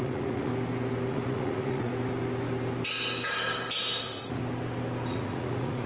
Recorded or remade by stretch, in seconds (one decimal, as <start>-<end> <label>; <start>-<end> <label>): 0.0-0.5 remade; 0.5-1.1 recorded; 1.1-1.9 remade; 1.9-4.0 recorded; 4.0-4.4 remade; 4.4-5.1 recorded; 5.1-5.9 remade